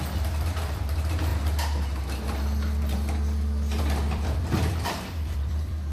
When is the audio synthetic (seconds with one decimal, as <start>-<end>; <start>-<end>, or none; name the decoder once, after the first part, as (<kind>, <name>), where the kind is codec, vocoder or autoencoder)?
0.0-1.3 (vocoder, BigVGAN v2); 3.8-5.9